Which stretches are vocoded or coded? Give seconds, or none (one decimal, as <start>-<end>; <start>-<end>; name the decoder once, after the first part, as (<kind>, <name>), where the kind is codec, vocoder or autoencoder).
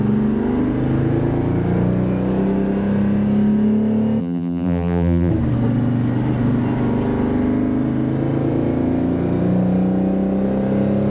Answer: 4.2-5.3 (vocoder, BigVGAN v2)